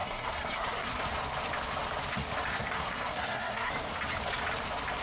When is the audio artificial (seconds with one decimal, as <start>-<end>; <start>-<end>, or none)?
0.0-1.0; 2.5-3.7